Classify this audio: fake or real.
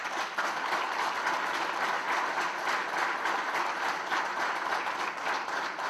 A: fake